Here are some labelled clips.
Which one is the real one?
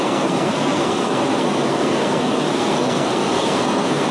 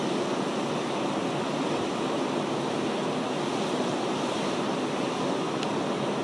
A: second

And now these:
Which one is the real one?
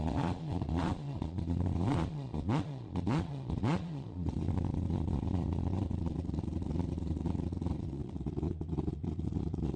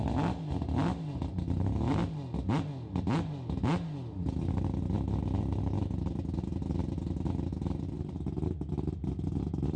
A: second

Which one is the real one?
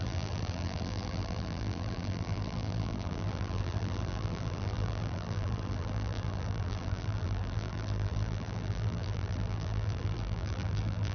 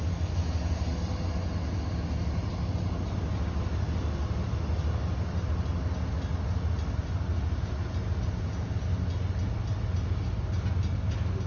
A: second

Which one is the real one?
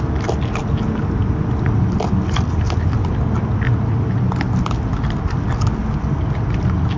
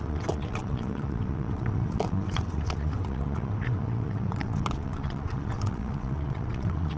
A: first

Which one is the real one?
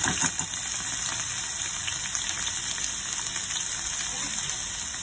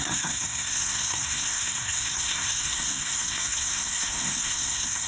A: first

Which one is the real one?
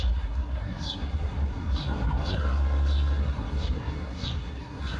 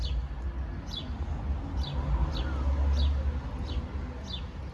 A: second